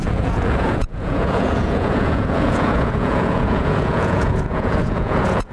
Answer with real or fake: fake